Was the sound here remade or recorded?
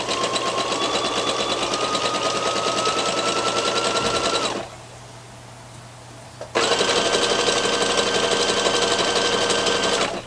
recorded